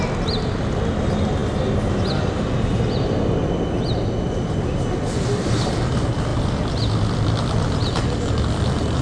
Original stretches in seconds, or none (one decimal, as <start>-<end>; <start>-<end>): 0.0-6.3